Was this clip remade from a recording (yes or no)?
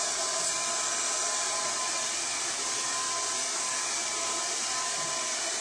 no